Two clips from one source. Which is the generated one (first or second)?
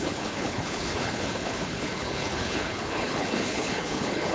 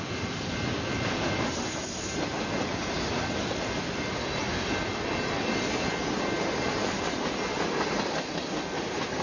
first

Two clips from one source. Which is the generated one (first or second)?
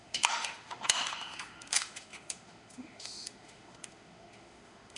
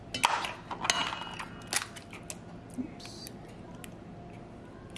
first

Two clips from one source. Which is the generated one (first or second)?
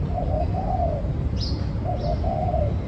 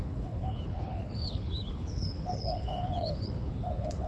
second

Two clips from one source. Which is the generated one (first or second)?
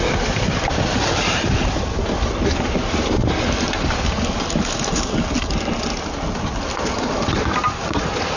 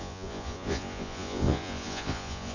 second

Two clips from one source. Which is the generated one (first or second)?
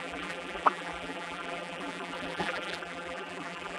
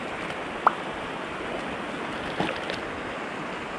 first